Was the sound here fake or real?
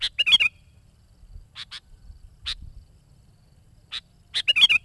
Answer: real